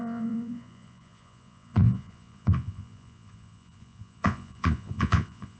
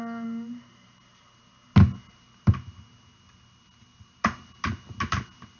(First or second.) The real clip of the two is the second